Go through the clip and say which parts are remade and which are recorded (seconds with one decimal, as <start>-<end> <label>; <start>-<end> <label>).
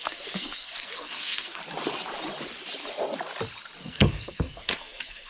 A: 0.0-1.6 remade; 1.6-3.8 recorded; 3.8-5.3 remade